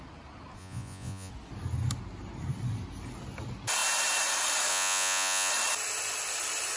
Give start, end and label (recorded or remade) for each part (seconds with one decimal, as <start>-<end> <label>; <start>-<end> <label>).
0.0-0.6 recorded; 0.6-1.3 remade; 1.3-4.7 recorded; 4.7-5.5 remade; 5.5-6.8 recorded